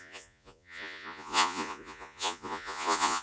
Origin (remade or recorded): remade